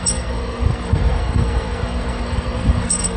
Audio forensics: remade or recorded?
remade